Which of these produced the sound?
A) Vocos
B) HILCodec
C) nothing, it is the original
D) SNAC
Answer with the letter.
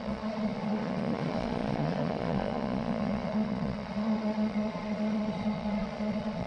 A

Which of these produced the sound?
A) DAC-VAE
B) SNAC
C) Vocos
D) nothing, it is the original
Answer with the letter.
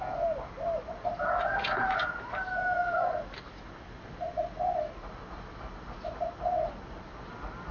D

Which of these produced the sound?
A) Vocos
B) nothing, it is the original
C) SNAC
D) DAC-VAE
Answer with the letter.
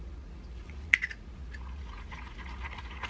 A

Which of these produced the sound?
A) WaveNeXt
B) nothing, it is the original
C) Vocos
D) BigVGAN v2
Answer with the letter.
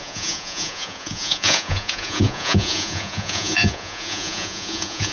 C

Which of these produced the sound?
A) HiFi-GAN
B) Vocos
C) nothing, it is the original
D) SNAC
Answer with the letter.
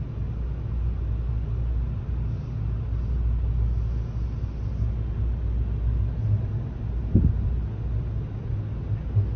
C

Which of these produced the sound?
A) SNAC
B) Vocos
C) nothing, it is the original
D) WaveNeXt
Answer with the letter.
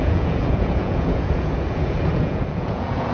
B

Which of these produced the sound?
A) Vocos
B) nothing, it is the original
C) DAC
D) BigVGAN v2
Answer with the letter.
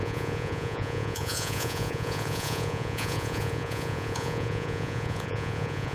A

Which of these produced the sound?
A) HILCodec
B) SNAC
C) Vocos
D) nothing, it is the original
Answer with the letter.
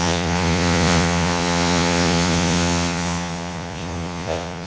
C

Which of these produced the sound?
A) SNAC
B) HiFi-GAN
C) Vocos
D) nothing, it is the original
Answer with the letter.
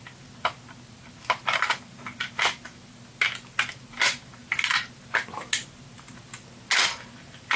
D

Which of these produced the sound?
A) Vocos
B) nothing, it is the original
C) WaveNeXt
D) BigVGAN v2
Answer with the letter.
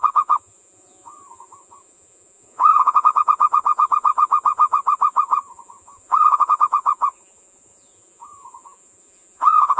A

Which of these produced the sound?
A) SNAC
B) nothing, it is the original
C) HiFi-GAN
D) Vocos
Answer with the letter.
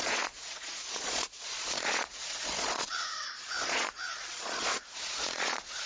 D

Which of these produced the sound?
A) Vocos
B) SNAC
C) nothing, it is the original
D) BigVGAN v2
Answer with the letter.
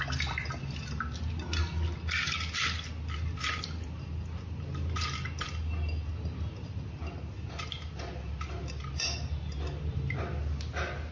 C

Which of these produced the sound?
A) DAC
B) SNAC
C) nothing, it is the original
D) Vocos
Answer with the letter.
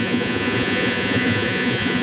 D